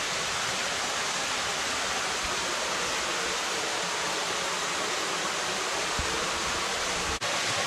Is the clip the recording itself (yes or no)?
yes